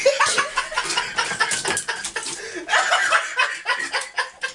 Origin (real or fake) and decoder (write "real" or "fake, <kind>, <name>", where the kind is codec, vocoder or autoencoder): real